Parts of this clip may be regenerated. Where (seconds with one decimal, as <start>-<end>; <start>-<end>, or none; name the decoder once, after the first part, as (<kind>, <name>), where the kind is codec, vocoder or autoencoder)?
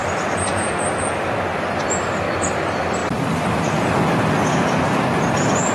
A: none